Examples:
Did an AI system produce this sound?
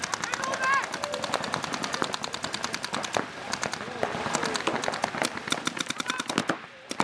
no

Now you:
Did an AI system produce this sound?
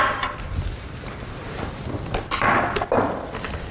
no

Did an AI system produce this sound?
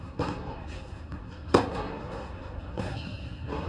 yes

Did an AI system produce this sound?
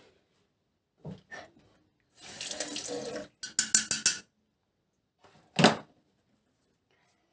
no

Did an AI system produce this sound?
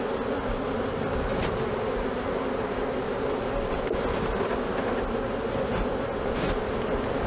no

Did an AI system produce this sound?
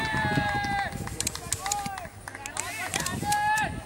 no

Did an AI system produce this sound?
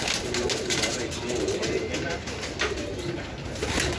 no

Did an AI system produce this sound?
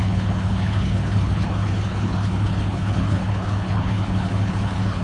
yes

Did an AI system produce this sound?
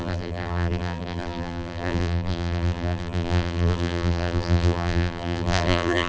yes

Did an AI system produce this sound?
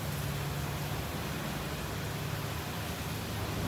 no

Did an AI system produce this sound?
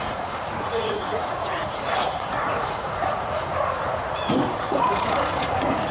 yes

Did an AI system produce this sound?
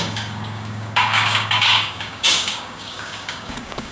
yes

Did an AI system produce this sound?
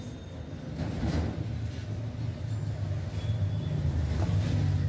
no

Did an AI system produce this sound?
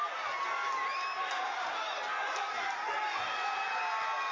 no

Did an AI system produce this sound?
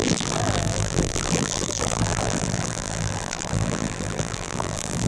yes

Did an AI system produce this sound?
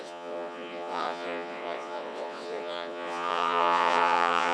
yes